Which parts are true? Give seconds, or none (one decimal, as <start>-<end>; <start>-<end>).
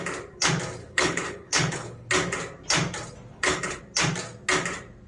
0.0-0.8; 2.1-3.3; 3.8-5.1